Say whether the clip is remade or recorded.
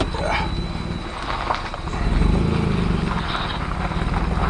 recorded